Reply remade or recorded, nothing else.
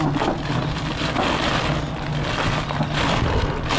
recorded